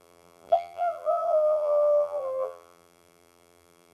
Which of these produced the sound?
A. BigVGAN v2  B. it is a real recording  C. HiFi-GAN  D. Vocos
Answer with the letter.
A